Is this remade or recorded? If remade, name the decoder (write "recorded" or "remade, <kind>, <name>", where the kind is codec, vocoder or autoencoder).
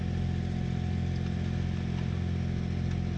recorded